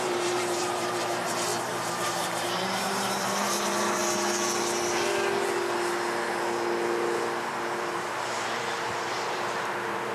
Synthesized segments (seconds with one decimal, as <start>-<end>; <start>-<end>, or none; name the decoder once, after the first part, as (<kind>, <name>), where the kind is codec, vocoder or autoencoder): 0.0-4.0 (vocoder, BigVGAN v2); 7.6-10.1